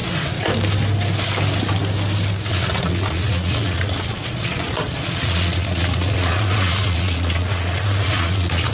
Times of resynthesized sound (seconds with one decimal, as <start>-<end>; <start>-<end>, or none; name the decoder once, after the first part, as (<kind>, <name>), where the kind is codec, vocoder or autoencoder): 2.5-8.7 (vocoder, Vocos)